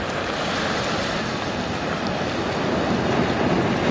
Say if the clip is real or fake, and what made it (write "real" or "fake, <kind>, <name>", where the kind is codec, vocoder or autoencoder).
real